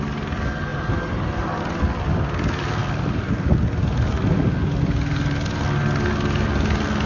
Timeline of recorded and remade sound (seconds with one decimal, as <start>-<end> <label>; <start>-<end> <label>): 0.0-0.7 recorded; 0.7-1.6 remade; 1.6-7.1 recorded